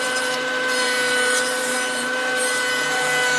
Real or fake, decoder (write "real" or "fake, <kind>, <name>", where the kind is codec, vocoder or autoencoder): fake, vocoder, BigVGAN v2